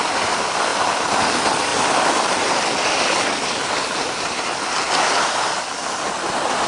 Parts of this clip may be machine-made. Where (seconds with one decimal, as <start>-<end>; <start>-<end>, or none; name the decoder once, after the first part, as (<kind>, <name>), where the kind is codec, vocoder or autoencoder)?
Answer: none